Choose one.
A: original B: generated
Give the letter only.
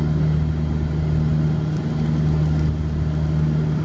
A